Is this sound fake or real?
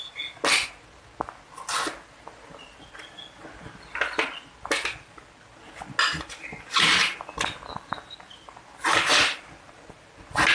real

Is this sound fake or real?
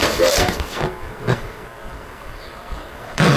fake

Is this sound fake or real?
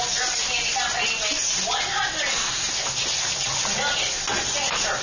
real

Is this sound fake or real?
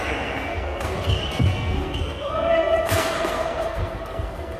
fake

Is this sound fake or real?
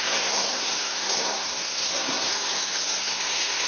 fake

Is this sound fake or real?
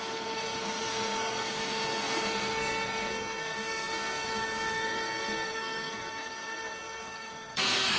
fake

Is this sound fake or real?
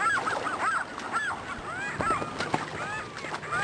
real